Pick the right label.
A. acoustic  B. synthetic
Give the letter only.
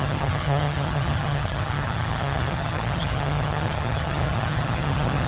B